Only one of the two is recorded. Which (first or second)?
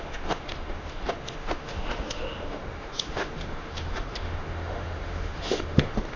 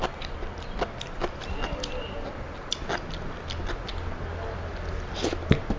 second